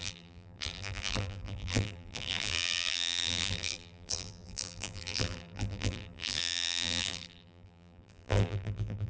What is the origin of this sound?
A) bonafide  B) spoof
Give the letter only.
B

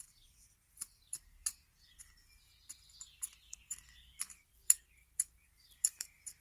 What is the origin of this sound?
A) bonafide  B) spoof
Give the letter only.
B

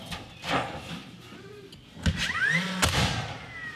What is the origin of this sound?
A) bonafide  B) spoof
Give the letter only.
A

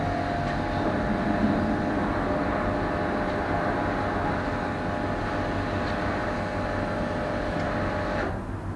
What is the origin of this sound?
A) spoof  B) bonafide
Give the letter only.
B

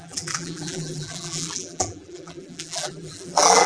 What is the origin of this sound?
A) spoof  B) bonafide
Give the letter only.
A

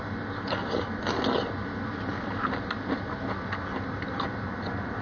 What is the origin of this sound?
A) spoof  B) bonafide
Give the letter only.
B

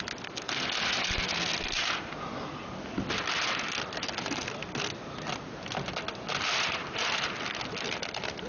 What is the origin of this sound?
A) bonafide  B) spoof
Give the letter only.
A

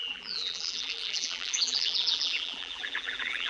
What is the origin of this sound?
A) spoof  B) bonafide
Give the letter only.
A